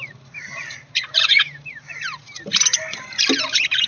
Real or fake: fake